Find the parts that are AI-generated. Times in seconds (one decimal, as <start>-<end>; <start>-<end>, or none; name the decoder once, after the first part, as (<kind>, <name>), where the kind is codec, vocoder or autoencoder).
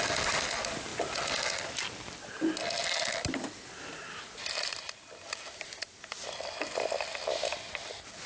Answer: none